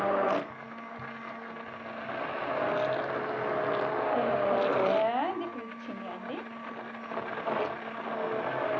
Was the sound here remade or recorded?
recorded